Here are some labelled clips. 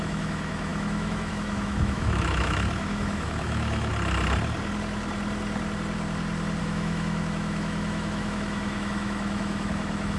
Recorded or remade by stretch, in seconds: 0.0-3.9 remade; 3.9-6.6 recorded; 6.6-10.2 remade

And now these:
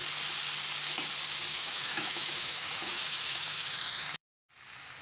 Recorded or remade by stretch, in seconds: 0.0-1.5 recorded; 1.5-4.5 remade; 4.5-5.0 recorded

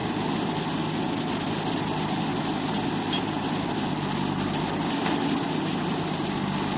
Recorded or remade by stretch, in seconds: 0.0-6.8 recorded

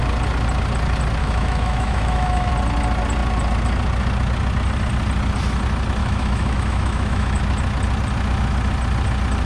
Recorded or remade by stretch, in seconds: 0.0-1.2 recorded; 1.2-2.5 remade; 2.5-6.0 recorded; 6.0-7.4 remade; 7.4-9.5 recorded

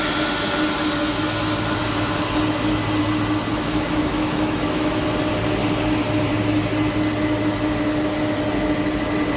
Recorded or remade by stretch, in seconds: 0.0-3.5 recorded; 3.5-5.0 remade; 5.0-9.4 recorded